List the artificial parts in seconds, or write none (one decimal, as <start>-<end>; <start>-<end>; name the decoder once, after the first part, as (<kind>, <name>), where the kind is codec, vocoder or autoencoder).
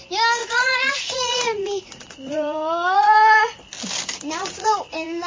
0.4-3.6 (vocoder, Vocos); 4.4-5.3